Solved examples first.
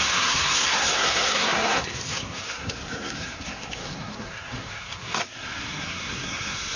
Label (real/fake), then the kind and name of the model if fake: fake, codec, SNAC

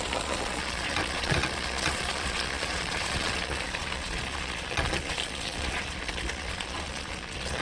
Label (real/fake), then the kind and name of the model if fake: fake, vocoder, Vocos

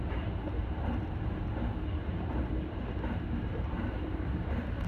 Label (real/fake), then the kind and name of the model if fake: real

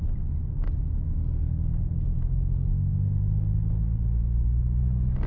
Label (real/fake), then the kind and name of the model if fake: real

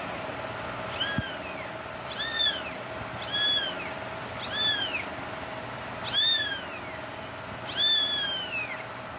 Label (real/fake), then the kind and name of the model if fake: fake, vocoder, BigVGAN v2